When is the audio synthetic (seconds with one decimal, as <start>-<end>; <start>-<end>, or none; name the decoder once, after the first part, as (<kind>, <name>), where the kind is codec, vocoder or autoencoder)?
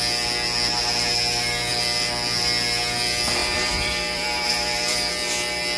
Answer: 3.4-5.1 (vocoder, BigVGAN v2)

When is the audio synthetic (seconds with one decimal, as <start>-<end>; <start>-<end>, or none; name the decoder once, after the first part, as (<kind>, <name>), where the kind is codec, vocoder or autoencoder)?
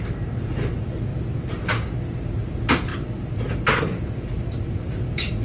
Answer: 0.0-1.1 (vocoder, BigVGAN v2); 2.0-2.9; 3.8-5.4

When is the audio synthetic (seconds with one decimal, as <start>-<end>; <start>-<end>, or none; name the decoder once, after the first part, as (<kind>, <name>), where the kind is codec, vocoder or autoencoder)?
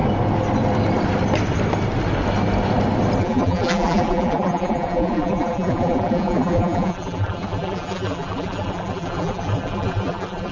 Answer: 3.2-10.5 (vocoder, BigVGAN v2)